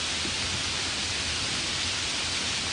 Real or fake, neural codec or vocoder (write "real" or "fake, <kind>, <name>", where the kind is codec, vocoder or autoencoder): real